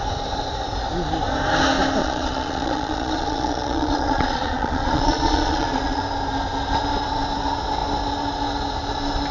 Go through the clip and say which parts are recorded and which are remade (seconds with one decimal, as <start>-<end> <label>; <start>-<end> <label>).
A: 0.0-2.0 recorded; 2.0-6.0 remade; 6.0-9.3 recorded